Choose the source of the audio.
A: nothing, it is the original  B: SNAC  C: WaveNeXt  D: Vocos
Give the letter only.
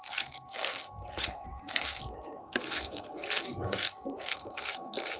B